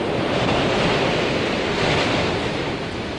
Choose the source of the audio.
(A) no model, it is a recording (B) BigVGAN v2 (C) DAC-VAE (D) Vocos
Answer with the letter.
B